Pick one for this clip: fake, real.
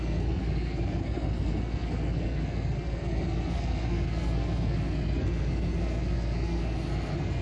fake